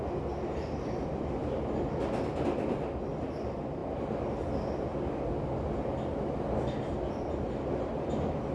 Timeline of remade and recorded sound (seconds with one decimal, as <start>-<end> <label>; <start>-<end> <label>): 0.0-8.5 recorded